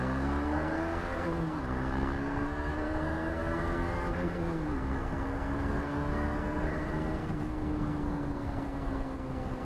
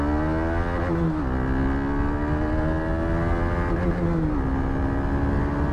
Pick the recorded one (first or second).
second